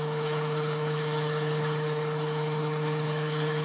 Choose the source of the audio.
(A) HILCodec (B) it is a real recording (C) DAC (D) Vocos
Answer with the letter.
A